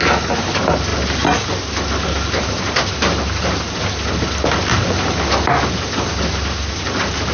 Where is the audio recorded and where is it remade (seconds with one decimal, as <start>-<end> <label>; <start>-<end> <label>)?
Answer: 0.0-7.3 recorded